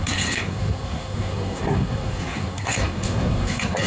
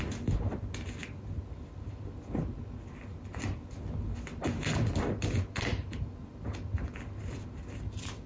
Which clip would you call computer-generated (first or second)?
first